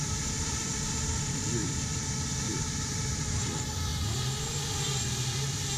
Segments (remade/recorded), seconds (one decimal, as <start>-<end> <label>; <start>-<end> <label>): 0.0-3.9 remade; 3.9-4.5 recorded; 4.5-5.8 remade